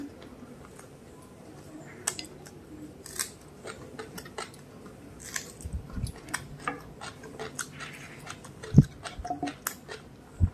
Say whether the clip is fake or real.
real